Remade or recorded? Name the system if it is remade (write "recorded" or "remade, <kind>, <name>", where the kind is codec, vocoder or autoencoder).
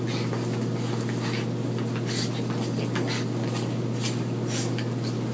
recorded